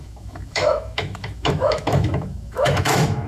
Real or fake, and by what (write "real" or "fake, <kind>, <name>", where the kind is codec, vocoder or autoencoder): fake, autoencoder, DAC-VAE